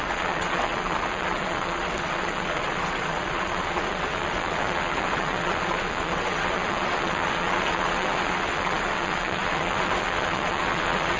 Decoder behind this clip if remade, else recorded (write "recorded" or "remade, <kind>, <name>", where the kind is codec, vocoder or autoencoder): remade, vocoder, WaveNeXt